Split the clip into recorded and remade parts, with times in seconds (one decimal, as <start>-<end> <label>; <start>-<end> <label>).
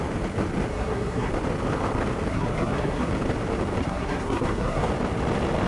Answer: 0.0-0.7 recorded; 0.7-1.3 remade; 1.3-2.3 recorded; 2.3-3.1 remade; 3.1-3.8 recorded; 3.8-4.9 remade; 4.9-5.7 recorded